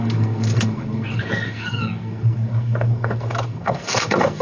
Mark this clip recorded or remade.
remade